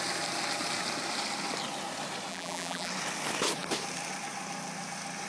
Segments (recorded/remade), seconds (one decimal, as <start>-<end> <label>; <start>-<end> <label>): 0.0-2.3 recorded; 2.3-2.9 remade; 2.9-5.3 recorded